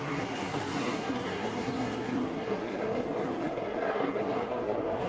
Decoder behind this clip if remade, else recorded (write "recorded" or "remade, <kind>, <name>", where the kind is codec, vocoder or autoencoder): remade, codec, SNAC